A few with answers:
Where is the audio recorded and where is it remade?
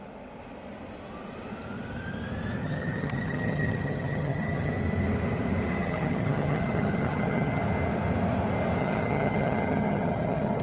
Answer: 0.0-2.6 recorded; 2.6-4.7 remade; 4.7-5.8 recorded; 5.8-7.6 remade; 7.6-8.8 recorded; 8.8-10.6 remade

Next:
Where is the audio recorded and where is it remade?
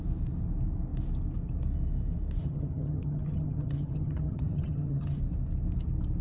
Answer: 0.0-2.4 recorded; 2.4-5.2 remade; 5.2-6.2 recorded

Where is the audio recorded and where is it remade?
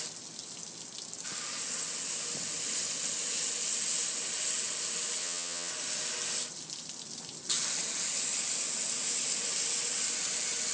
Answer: 0.0-5.2 recorded; 5.2-5.7 remade; 5.7-10.7 recorded